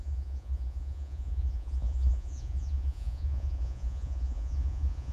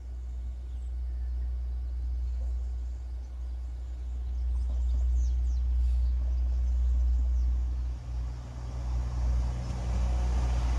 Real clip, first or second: second